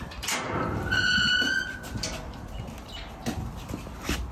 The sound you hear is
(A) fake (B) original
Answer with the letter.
B